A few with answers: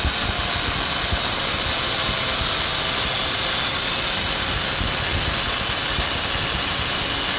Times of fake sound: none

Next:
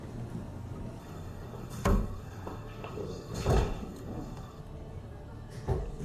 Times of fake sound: 1.0-4.6 (codec, DAC)

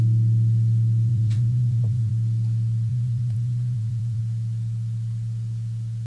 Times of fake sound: 1.1-2.1 (vocoder, Vocos); 2.9-4.2

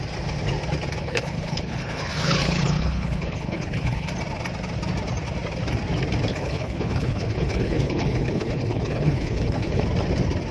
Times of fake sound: 1.0-4.1 (codec, HILCodec); 6.3-9.8

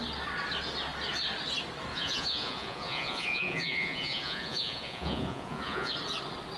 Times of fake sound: 1.9-5.9 (vocoder, Vocos)

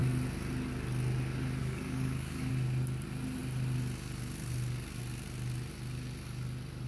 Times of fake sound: 1.6-2.5 (codec, DAC)

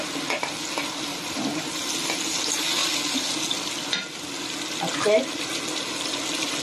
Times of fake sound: 1.1-1.9 (vocoder, BigVGAN v2)